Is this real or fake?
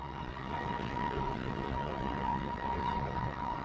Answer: fake